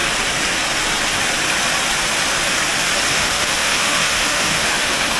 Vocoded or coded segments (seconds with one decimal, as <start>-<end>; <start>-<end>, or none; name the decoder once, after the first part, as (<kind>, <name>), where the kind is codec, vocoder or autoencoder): 3.1-5.2 (autoencoder, DAC-VAE)